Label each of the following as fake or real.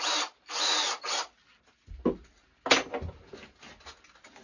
real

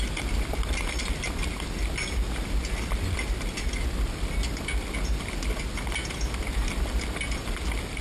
real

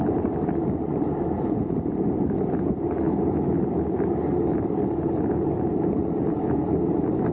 real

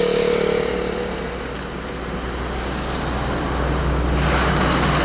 real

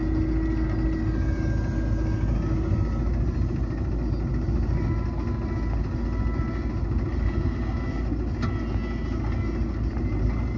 real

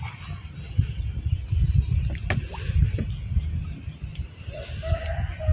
real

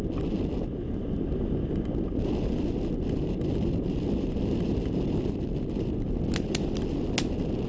real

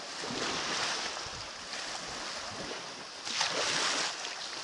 real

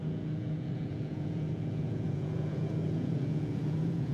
fake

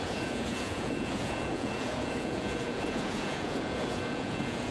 fake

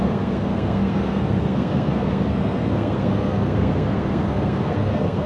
fake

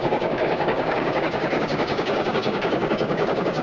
fake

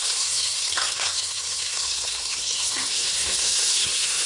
fake